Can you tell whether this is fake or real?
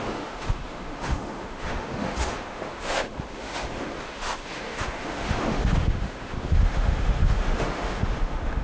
fake